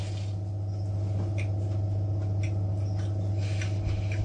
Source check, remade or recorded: recorded